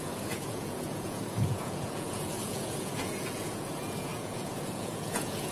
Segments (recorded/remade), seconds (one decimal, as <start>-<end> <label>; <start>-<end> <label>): 0.0-5.5 remade